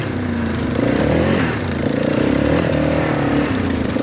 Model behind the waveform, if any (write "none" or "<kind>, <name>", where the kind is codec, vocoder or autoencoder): vocoder, BigVGAN v2